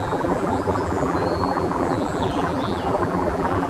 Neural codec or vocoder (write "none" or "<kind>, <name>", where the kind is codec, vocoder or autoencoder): vocoder, BigVGAN v2